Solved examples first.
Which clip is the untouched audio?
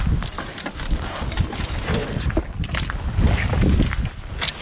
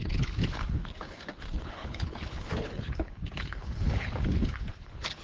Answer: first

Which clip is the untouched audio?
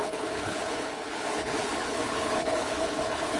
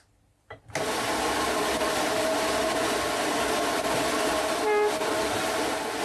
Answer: second